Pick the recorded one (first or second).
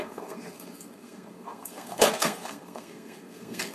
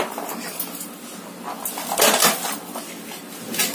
second